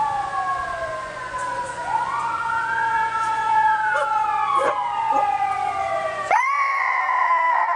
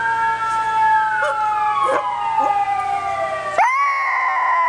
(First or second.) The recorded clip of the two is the second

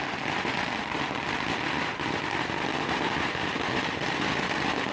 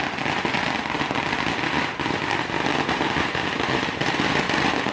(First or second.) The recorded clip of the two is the second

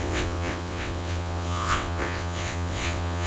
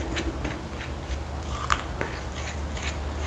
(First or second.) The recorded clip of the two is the second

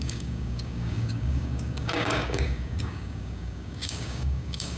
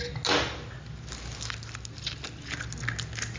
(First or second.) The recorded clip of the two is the second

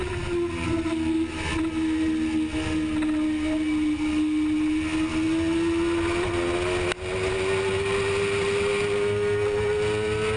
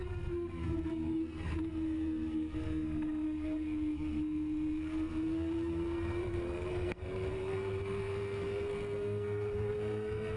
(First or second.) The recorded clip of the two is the first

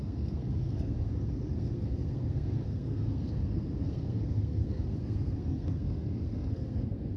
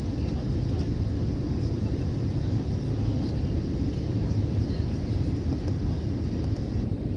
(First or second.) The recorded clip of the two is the second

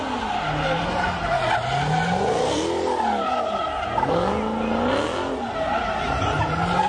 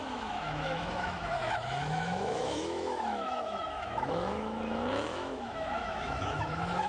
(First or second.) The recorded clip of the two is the first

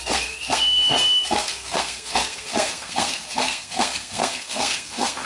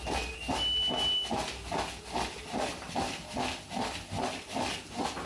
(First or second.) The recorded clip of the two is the second